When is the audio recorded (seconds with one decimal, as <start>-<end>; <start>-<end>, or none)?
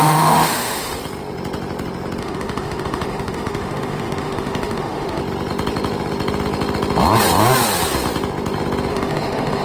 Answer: 1.0-2.2; 5.2-8.9